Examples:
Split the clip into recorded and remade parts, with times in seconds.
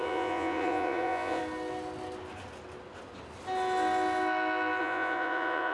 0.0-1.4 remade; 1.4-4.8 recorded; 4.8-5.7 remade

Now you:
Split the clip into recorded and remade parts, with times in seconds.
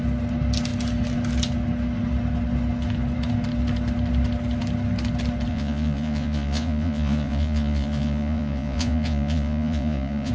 0.0-5.5 recorded; 5.5-10.3 remade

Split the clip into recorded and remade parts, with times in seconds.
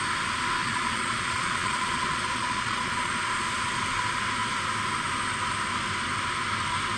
0.0-0.6 recorded; 0.6-3.1 remade; 3.1-7.0 recorded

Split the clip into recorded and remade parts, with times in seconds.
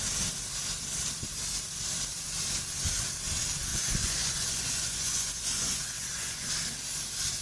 0.0-3.7 recorded; 3.7-6.5 remade; 6.5-7.4 recorded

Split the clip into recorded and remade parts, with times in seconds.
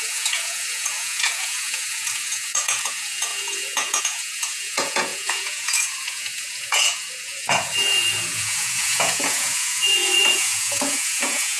0.0-11.6 remade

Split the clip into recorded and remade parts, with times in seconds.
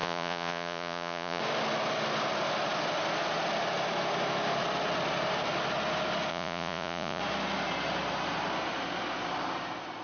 0.0-1.4 remade; 1.4-6.3 recorded; 6.3-7.2 remade; 7.2-10.0 recorded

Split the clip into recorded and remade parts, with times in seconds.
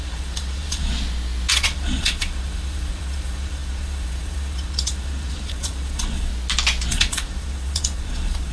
0.0-0.9 remade; 0.9-1.5 recorded; 1.5-6.3 remade; 6.3-6.9 recorded; 6.9-8.5 remade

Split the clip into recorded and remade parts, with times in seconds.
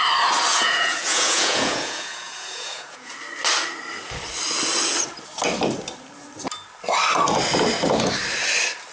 0.0-0.5 recorded; 0.5-3.1 remade; 3.1-8.9 recorded